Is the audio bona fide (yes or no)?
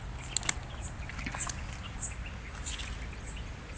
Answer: yes